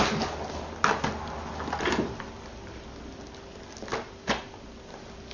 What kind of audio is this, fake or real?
real